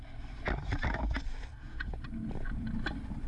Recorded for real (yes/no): no